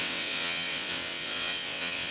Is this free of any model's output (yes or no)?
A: no